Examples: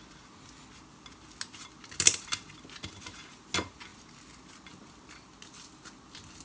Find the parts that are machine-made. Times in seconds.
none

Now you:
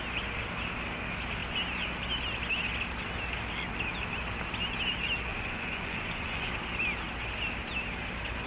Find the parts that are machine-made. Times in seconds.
5.3-6.5 (vocoder, Vocos)

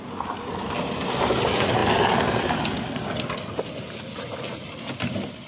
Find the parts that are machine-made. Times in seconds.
none

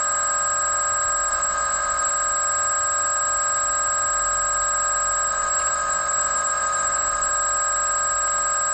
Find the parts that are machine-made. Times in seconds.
1.3-2.1 (vocoder, Vocos); 5.3-7.3